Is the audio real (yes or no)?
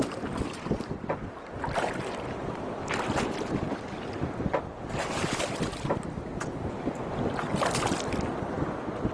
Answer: yes